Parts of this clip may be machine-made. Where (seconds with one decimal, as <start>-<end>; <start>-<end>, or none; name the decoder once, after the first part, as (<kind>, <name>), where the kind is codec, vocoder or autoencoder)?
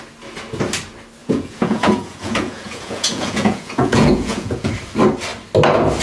1.2-4.7 (vocoder, Vocos)